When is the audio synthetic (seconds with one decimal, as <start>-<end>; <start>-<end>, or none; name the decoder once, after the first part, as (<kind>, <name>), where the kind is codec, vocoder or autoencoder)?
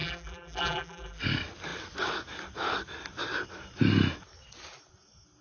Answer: 0.0-1.2 (vocoder, BigVGAN v2)